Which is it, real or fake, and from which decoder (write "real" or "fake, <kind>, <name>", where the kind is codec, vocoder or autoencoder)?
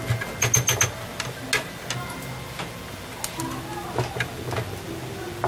real